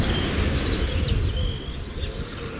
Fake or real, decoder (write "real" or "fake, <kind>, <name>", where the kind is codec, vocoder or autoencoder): real